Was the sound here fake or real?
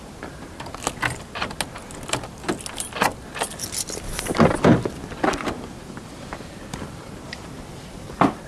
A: real